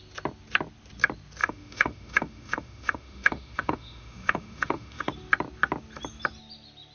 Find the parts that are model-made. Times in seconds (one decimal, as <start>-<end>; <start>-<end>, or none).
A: 1.4-5.1